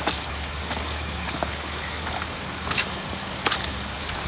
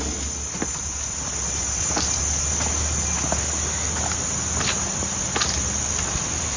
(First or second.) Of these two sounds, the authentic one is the second